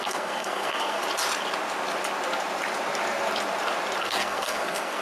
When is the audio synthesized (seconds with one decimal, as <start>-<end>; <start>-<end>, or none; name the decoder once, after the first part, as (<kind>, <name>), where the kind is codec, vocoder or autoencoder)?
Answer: 0.0-1.0 (codec, SNAC); 4.0-5.0